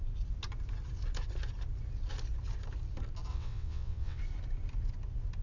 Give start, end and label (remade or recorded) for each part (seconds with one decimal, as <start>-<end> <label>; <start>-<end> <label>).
0.0-3.3 recorded; 3.3-4.2 remade; 4.2-5.4 recorded